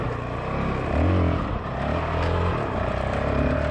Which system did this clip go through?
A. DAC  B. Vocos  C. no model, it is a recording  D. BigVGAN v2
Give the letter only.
C